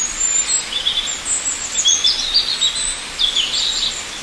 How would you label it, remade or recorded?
recorded